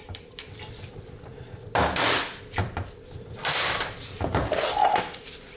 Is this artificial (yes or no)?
yes